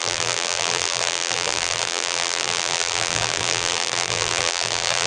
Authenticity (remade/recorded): remade